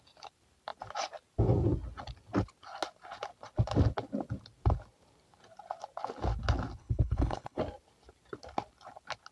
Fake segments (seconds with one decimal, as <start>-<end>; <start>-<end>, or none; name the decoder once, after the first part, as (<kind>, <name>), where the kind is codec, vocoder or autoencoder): 6.8-7.6 (codec, HILCodec)